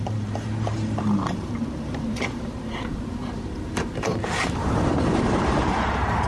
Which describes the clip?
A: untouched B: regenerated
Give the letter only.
B